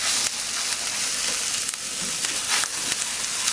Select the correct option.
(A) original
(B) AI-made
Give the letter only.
A